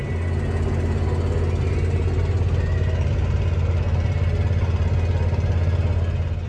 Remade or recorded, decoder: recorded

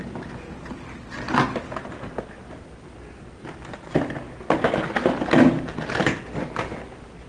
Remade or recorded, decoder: recorded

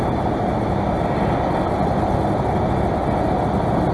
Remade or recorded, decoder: recorded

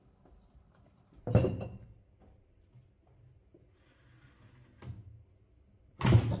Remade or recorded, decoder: recorded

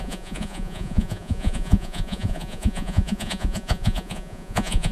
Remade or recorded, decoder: remade, vocoder, Vocos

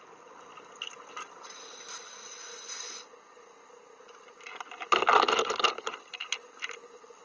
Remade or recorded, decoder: recorded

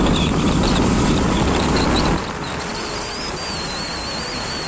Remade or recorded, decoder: recorded